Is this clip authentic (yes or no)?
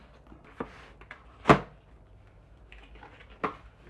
yes